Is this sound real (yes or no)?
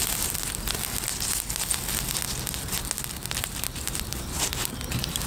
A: yes